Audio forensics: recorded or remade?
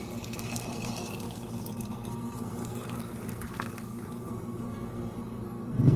remade